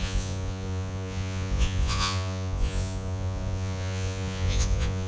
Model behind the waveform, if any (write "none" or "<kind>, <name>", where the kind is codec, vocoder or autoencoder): vocoder, Vocos